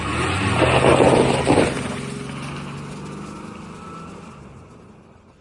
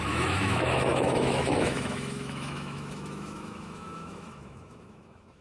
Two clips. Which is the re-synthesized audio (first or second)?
second